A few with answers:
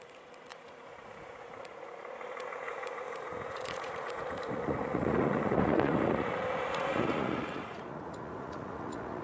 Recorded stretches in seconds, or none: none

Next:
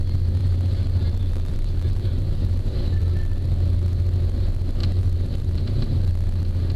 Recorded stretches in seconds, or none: 0.0-0.4; 3.0-4.8; 6.1-6.8